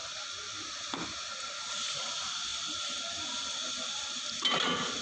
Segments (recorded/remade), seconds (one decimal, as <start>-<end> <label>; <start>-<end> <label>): 0.0-5.0 recorded